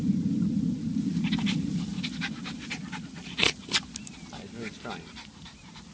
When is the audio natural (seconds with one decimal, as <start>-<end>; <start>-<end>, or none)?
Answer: 1.9-5.4